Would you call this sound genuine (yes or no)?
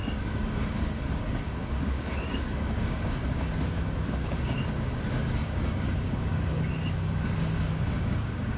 no